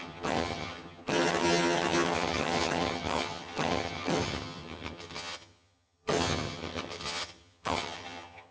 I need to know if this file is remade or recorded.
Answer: remade